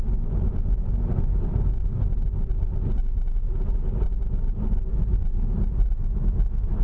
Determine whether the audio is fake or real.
real